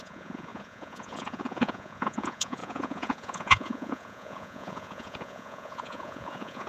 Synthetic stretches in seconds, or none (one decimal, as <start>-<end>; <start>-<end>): 0.0-6.7